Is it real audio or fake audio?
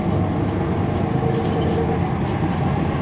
real